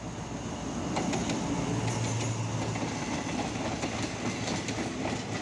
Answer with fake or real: real